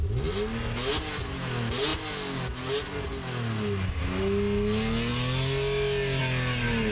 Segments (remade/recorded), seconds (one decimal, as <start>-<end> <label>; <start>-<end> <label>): 0.0-6.9 recorded